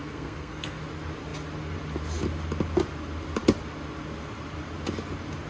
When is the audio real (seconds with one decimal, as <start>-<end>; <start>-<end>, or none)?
0.8-5.5